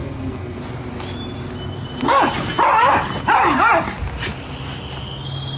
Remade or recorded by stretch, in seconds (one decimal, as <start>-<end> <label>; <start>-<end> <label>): 0.0-0.6 remade; 0.6-5.6 recorded